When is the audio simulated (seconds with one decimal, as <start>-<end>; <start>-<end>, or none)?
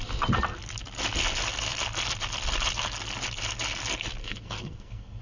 4.2-5.2